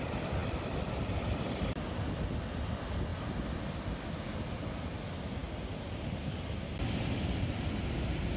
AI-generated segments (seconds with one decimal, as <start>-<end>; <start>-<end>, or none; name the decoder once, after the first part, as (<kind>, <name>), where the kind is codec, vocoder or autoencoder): none

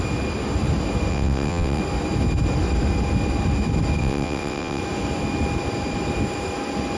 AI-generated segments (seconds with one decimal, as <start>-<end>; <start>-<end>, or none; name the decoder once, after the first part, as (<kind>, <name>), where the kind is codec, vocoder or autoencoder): 1.1-1.8 (vocoder, WaveNeXt); 4.0-4.8

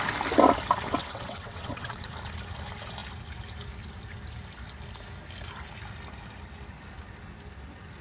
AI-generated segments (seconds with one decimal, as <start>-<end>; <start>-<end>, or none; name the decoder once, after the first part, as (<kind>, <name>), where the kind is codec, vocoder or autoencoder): 1.0-2.1 (vocoder, WaveNeXt)

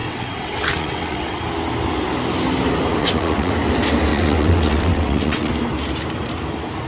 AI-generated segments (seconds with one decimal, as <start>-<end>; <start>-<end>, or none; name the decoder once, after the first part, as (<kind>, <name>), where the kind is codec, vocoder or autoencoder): 0.0-1.4 (vocoder, WaveNeXt); 3.0-3.5; 4.1-5.5

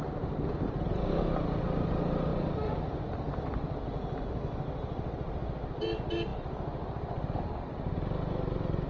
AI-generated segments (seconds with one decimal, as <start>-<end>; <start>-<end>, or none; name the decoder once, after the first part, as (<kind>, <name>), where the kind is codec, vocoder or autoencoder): none

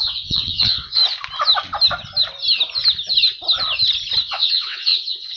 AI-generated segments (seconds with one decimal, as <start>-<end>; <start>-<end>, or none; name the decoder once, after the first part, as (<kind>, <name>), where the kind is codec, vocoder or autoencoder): 0.0-1.0 (vocoder, WaveNeXt); 4.2-5.4

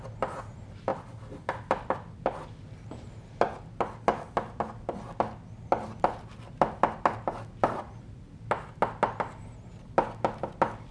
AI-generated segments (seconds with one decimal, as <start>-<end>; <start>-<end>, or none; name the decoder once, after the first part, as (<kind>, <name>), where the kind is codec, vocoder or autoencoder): none

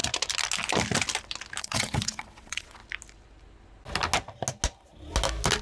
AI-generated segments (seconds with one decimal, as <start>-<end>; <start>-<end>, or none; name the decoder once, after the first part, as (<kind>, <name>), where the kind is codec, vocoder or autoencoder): 1.6-2.8 (vocoder, WaveNeXt)